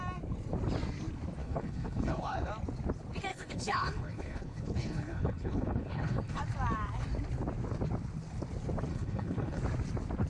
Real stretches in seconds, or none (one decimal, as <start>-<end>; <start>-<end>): 0.0-1.4; 2.5-3.3; 6.4-8.9; 9.6-10.3